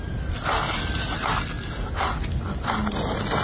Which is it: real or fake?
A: real